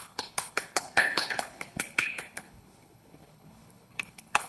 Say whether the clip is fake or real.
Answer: fake